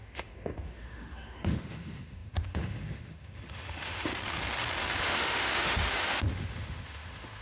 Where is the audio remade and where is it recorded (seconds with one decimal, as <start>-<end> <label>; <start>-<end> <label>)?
0.0-4.1 remade; 4.1-5.0 recorded; 5.0-7.4 remade